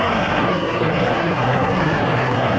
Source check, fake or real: fake